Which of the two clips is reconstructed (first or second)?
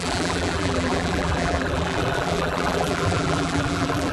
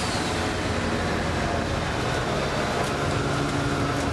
first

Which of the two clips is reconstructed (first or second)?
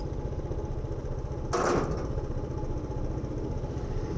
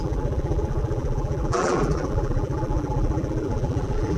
second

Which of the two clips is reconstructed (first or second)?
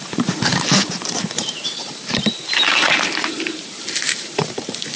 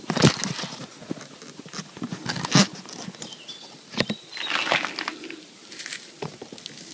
first